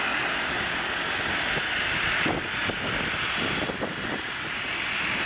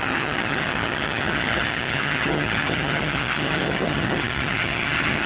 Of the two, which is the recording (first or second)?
first